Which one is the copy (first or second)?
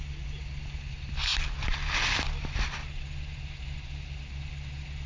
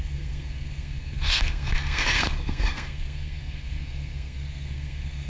second